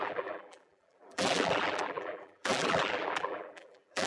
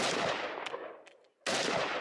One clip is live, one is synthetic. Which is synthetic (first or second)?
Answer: first